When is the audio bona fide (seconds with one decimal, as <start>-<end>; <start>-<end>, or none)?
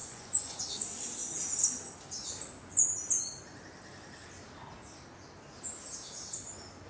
0.6-6.9